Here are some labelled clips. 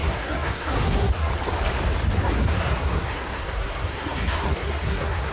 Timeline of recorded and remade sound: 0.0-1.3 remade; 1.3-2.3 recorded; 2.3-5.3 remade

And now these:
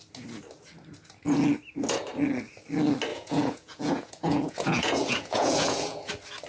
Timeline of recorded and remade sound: 0.0-3.1 recorded; 3.1-6.1 remade; 6.1-6.5 recorded

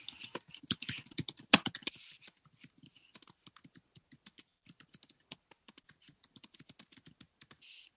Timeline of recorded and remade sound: 0.0-8.0 recorded

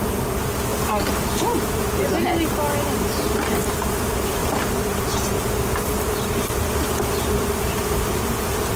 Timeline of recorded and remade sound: 0.0-8.8 recorded

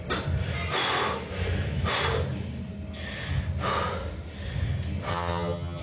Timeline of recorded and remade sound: 0.0-5.1 recorded; 5.1-5.8 remade

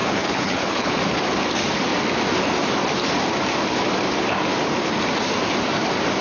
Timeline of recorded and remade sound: 0.0-1.0 remade; 1.0-6.2 recorded